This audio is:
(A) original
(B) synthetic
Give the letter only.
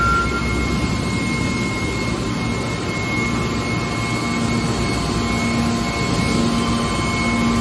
A